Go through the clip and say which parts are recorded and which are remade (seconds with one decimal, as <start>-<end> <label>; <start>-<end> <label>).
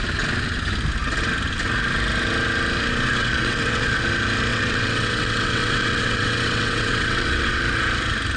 0.0-3.2 recorded; 3.2-4.0 remade; 4.0-4.5 recorded; 4.5-7.6 remade; 7.6-8.4 recorded